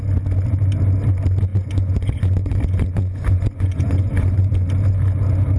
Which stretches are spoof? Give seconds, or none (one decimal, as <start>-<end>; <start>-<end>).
1.5-4.4